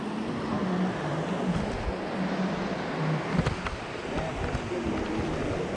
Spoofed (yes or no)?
no